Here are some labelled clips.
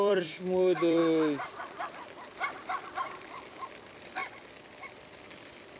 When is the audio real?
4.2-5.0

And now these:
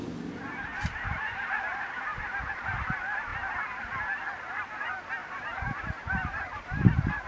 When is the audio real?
0.0-0.7; 2.7-5.2

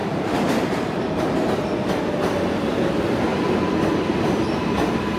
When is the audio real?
1.2-5.2